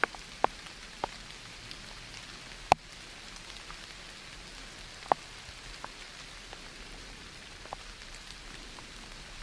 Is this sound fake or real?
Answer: real